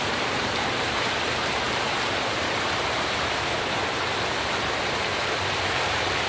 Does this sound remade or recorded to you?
remade